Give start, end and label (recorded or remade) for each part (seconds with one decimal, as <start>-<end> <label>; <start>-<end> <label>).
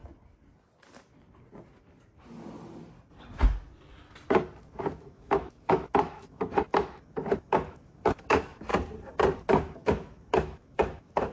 0.0-4.8 recorded; 4.8-8.7 remade; 8.7-9.5 recorded; 9.5-11.3 remade